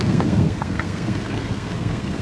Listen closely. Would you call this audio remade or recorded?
remade